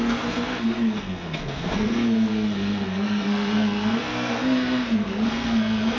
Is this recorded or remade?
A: remade